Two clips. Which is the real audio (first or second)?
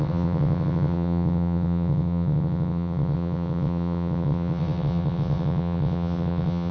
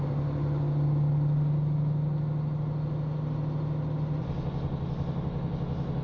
second